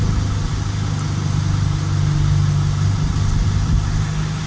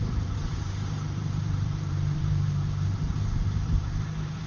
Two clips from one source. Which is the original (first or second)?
first